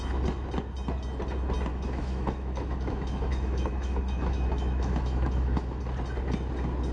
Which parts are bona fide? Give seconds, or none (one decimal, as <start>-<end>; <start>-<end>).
0.0-1.7; 5.8-6.9